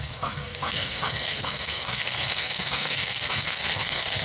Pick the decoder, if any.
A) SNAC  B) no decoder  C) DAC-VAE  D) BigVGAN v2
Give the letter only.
A